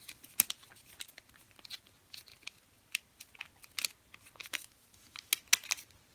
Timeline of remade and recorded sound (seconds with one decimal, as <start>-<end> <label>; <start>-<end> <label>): 0.0-4.4 recorded; 4.4-5.3 remade; 5.3-6.1 recorded